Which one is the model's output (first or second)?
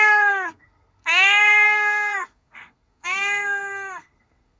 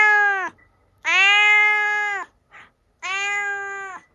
first